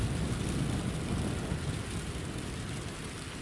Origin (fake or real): real